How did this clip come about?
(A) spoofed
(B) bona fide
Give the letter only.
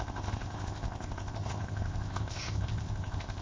A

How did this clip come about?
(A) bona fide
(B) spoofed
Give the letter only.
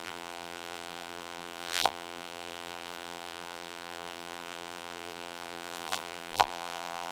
B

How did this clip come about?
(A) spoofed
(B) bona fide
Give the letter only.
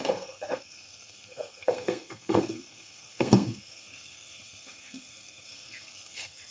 A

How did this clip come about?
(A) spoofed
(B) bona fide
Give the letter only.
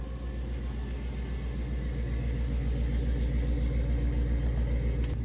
B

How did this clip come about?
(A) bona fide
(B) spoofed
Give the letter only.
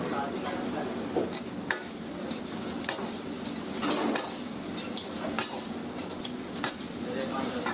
A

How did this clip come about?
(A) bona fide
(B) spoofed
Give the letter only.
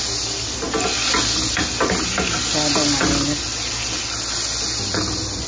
A